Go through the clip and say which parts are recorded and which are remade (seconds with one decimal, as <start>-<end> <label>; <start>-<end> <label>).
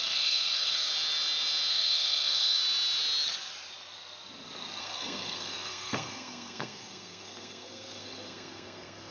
0.0-0.9 remade; 0.9-1.7 recorded; 1.7-2.6 remade; 2.6-4.8 recorded; 4.8-9.1 remade